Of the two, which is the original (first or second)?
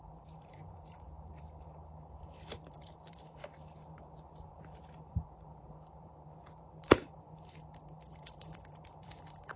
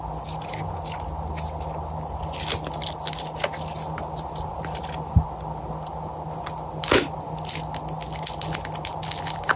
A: second